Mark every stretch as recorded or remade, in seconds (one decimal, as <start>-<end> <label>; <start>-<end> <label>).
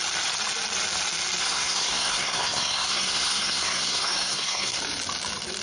0.0-1.4 recorded; 1.4-4.8 remade; 4.8-5.6 recorded